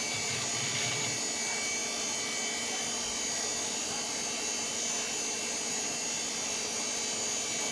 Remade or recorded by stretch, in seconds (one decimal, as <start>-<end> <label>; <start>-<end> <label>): 0.0-7.7 recorded